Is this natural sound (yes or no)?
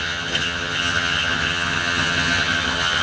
no